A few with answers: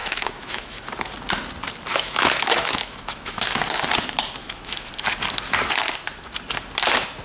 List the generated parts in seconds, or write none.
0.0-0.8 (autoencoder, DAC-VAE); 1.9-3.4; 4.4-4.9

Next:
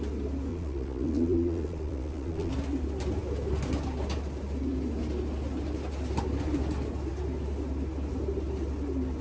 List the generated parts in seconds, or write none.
0.5-2.5 (vocoder, Vocos)

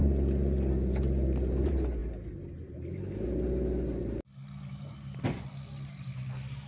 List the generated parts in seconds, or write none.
none

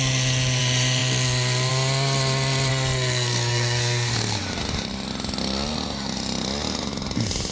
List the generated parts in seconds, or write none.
2.7-4.4 (codec, SNAC)